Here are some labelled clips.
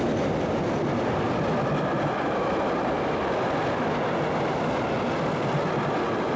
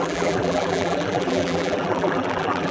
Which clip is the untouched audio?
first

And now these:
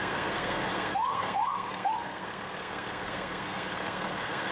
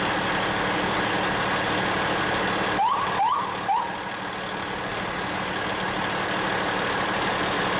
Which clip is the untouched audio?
second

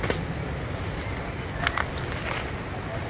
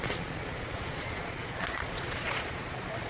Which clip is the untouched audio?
first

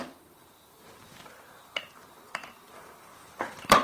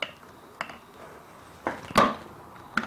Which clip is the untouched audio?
second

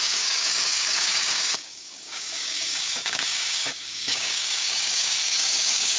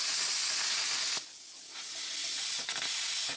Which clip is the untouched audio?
second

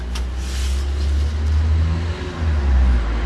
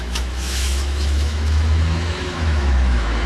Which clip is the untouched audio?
first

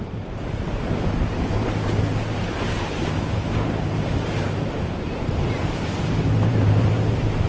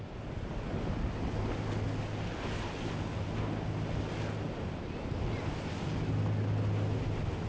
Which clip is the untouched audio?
second